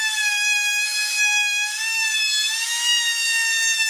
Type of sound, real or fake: fake